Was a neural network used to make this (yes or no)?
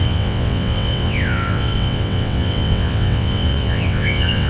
yes